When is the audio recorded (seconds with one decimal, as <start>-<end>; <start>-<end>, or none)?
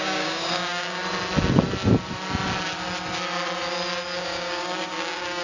1.0-4.2